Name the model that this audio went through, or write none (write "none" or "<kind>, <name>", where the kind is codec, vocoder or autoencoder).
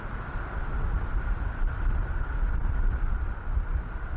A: none